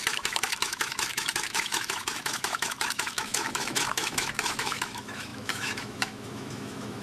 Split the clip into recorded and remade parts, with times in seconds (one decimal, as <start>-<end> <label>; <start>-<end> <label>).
0.0-7.0 remade